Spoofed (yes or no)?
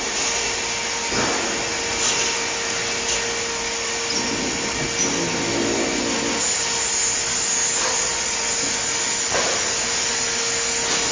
no